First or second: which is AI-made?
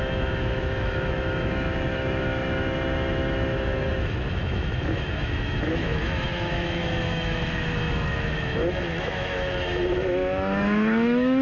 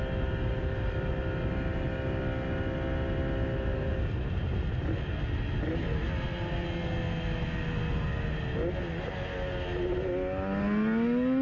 first